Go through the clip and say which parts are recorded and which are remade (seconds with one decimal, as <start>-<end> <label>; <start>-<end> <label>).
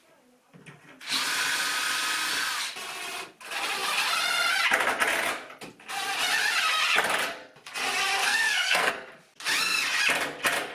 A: 0.0-8.2 recorded; 8.2-8.9 remade; 8.9-10.7 recorded